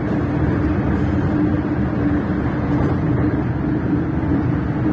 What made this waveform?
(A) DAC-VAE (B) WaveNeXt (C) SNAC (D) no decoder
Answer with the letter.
D